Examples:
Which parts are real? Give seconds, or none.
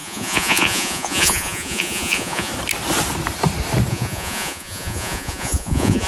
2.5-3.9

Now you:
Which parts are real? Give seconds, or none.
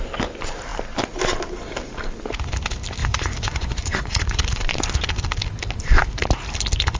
0.0-3.0; 4.4-7.0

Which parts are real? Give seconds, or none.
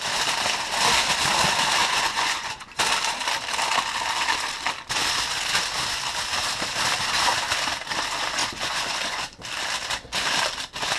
0.0-1.8; 2.8-8.4; 9.4-11.0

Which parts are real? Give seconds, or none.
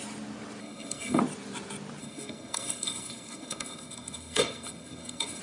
0.0-0.6; 1.2-2.0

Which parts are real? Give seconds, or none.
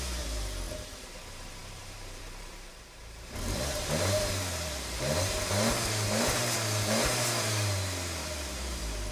none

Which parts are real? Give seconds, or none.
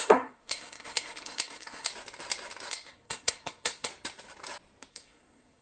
1.9-2.7; 3.9-4.9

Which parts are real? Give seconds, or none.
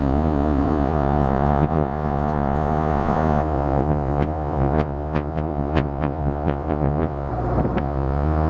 7.3-7.8